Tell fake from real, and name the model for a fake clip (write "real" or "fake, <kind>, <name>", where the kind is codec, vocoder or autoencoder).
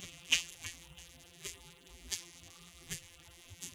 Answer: fake, vocoder, BigVGAN v2